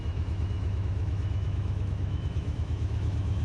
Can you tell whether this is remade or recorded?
remade